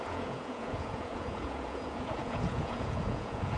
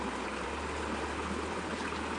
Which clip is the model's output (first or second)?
first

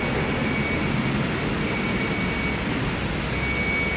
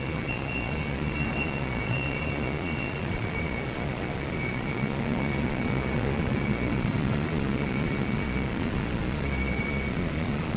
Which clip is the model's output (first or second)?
second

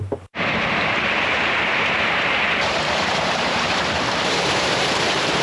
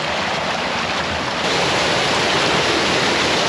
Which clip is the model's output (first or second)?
first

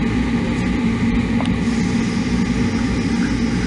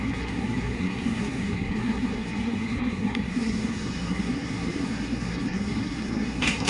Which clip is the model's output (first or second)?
second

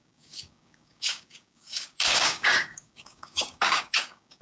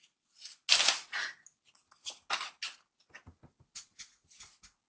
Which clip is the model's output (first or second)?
first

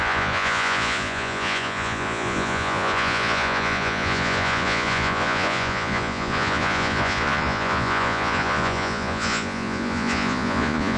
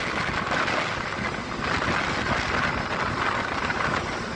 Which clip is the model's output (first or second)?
first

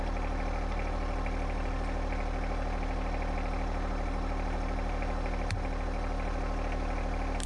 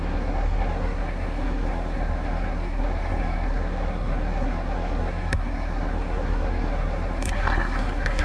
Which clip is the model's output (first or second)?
second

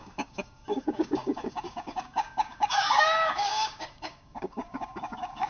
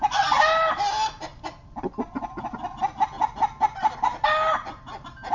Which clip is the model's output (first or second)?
first